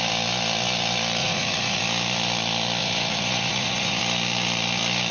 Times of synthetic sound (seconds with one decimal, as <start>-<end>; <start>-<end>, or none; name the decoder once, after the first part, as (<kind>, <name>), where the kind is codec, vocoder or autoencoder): 1.2-1.8 (vocoder, Vocos); 2.8-4.0

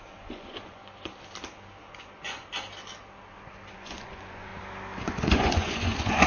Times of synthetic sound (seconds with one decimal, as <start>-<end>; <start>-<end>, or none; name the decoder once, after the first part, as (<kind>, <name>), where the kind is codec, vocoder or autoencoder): 0.0-0.8 (vocoder, Vocos); 1.9-2.4; 3.7-4.5; 5.0-6.3